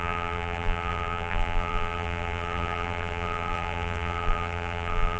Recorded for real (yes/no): no